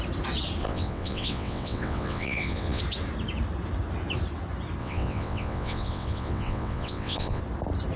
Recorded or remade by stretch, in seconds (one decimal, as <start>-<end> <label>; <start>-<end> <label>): 0.0-0.6 recorded; 0.6-2.8 remade; 2.8-4.8 recorded; 4.8-7.4 remade; 7.4-8.0 recorded